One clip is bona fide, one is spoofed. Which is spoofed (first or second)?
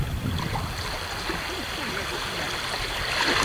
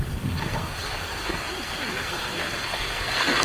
second